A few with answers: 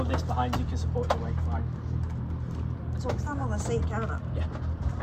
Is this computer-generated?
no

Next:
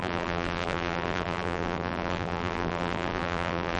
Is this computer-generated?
yes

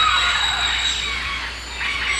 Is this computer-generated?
no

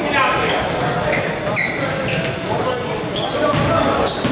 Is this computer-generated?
no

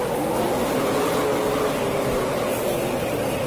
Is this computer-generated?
no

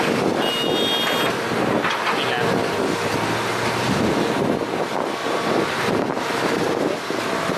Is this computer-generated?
no